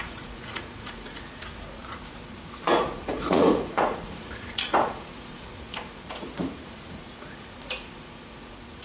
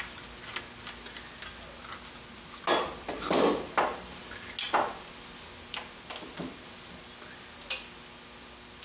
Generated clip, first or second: first